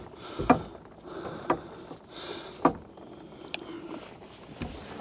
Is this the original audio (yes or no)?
yes